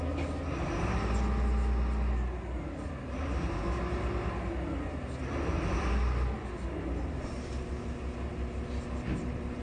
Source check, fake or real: real